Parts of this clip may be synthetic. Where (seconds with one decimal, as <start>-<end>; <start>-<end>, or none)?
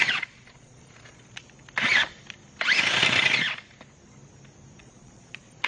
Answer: 0.0-1.4; 4.8-5.7